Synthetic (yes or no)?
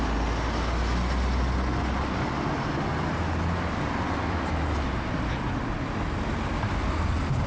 no